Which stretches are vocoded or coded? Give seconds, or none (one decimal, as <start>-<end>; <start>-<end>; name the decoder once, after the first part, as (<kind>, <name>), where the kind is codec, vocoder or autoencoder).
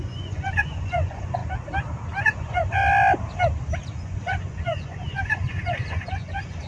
0.0-1.4 (vocoder, Vocos); 2.2-2.8; 4.0-6.7